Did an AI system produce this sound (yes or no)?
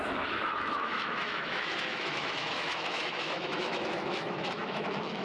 yes